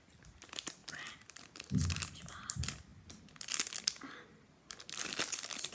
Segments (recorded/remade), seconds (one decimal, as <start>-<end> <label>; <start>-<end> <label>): 0.0-5.7 recorded